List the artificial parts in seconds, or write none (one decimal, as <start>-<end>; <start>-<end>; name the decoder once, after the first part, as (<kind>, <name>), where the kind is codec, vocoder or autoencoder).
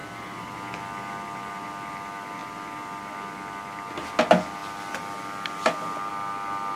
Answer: none